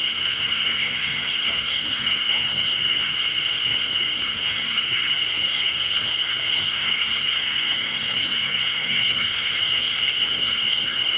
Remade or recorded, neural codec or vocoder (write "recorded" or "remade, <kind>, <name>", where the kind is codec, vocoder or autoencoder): remade, codec, SNAC